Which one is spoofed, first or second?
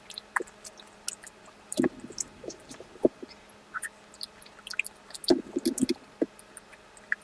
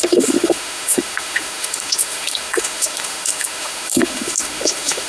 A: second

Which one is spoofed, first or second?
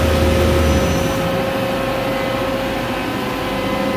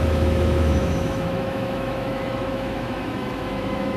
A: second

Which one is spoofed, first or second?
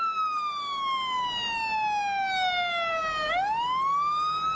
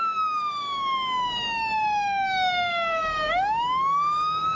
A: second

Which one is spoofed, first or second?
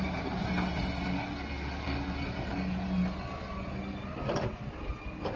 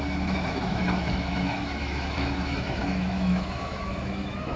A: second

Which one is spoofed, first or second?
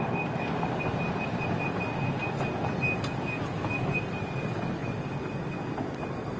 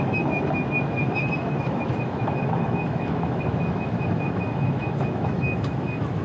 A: second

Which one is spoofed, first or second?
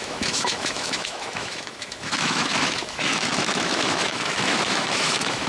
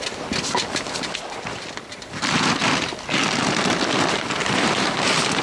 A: first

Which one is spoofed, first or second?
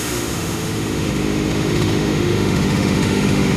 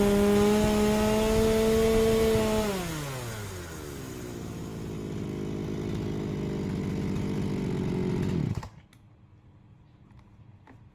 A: first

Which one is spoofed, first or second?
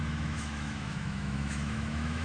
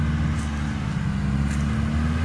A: first